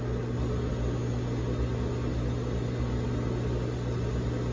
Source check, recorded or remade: recorded